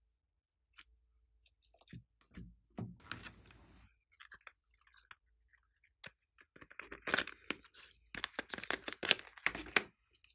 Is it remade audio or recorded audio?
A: recorded